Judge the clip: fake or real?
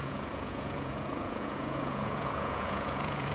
fake